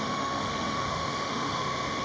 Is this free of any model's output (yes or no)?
no